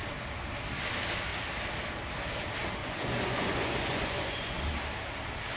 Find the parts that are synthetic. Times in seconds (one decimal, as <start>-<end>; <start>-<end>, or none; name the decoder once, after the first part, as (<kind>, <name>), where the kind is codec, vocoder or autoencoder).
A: 2.8-4.6 (vocoder, Vocos)